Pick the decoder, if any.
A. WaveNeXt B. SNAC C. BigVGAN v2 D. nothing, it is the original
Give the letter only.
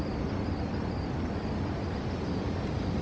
D